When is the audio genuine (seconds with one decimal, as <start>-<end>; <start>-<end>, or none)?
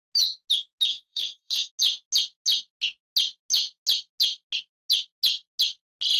0.0-0.9; 1.7-6.2